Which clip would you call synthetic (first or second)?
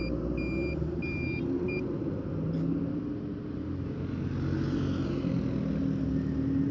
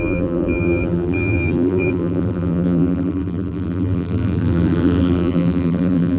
second